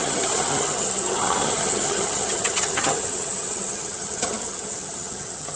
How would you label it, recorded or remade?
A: remade